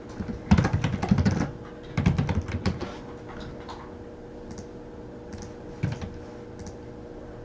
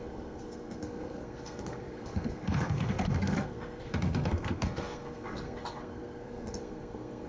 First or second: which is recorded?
first